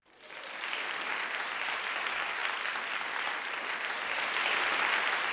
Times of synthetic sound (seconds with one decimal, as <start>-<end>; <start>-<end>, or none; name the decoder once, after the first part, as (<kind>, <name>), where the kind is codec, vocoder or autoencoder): 0.0-5.3 (vocoder, BigVGAN v2)